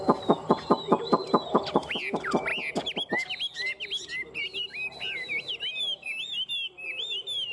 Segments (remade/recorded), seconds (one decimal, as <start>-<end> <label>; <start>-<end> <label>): 0.0-7.5 recorded